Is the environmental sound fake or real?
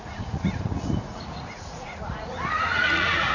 fake